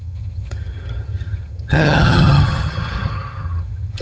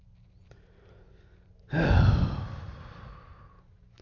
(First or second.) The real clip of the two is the second